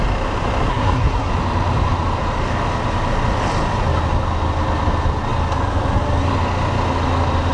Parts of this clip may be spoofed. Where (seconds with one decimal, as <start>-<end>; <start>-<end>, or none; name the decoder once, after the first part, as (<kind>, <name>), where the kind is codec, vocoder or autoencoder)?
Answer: 0.7-1.3 (codec, SNAC)